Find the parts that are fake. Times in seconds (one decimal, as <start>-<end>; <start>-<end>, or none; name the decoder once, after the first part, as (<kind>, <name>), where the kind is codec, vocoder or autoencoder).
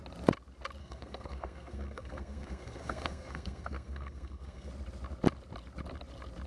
0.8-4.7 (codec, SNAC)